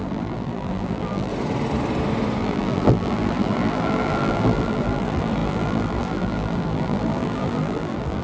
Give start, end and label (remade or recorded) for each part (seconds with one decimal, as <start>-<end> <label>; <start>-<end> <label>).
0.0-1.3 remade; 1.3-2.4 recorded; 2.4-8.2 remade